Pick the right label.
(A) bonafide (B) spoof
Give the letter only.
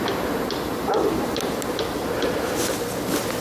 A